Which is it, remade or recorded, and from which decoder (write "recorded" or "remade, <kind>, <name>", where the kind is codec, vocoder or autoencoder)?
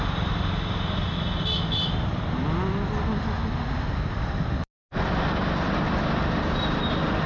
recorded